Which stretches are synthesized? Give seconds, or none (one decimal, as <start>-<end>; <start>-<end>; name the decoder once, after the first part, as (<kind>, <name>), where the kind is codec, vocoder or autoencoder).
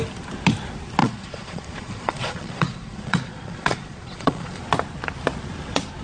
1.0-4.6 (vocoder, Vocos)